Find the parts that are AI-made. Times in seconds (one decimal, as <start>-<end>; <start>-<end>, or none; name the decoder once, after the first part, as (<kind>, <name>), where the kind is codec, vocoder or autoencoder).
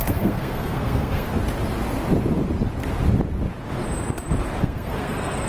0.0-1.3 (codec, SNAC); 4.6-5.5